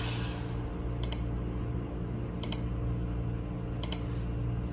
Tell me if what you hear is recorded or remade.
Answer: recorded